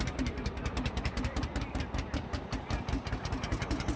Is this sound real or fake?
real